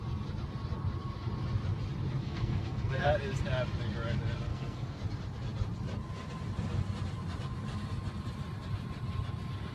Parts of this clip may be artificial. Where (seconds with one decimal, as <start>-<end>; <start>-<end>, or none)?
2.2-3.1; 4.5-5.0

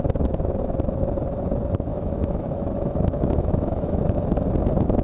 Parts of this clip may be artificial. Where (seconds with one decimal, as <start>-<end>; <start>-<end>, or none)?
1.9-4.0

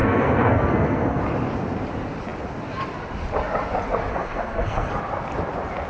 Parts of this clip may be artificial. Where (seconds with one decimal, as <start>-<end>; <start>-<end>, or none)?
0.0-1.2; 4.1-4.9

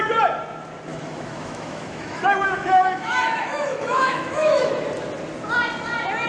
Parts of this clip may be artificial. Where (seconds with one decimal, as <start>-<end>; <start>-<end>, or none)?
0.9-4.7